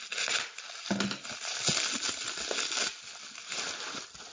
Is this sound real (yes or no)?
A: yes